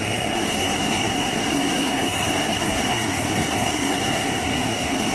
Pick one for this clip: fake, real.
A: fake